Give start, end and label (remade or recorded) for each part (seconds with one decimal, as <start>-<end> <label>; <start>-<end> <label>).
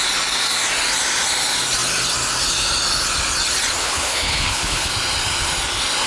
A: 0.0-3.8 recorded; 3.8-4.9 remade; 4.9-6.1 recorded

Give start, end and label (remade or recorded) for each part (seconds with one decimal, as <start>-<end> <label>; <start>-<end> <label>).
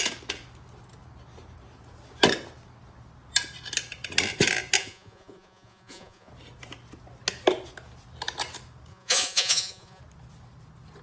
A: 0.0-4.8 recorded; 4.8-6.3 remade; 6.3-8.9 recorded; 8.9-10.0 remade; 10.0-11.0 recorded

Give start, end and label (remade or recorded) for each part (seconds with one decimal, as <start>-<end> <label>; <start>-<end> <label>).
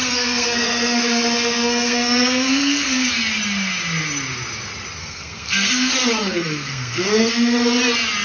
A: 0.0-3.1 remade; 3.1-5.0 recorded; 5.0-7.3 remade; 7.3-8.2 recorded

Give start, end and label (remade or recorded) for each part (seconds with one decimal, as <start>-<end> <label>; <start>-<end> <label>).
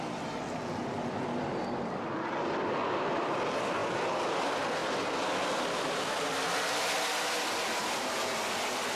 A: 0.0-3.8 remade; 3.8-4.3 recorded; 4.3-9.0 remade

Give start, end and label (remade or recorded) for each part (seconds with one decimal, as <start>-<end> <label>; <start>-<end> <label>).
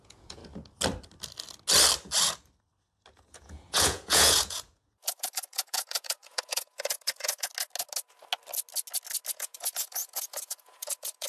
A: 0.0-0.4 remade; 0.4-3.1 recorded; 3.1-7.5 remade; 7.5-9.3 recorded; 9.3-11.3 remade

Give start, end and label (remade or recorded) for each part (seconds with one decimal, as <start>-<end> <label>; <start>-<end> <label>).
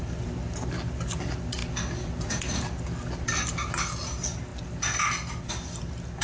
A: 0.0-6.2 recorded